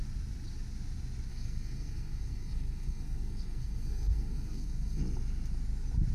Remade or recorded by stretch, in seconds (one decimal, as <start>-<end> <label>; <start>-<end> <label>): 0.0-1.3 recorded; 1.3-5.0 remade; 5.0-6.1 recorded